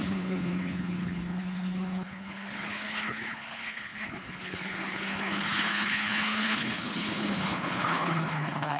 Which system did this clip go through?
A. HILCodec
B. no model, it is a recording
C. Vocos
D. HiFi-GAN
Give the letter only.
A